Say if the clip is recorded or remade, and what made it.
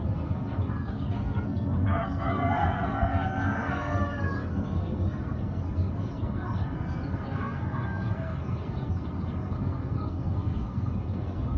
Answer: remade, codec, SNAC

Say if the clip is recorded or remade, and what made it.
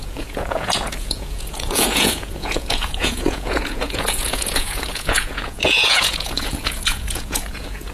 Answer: remade, vocoder, Vocos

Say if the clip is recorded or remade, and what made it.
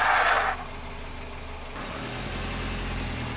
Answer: recorded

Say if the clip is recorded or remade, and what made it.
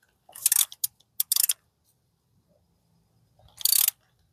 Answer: recorded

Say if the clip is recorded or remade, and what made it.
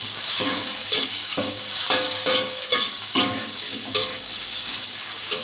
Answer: remade, codec, DAC